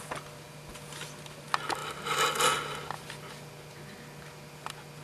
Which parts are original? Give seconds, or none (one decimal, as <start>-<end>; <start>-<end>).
0.0-5.0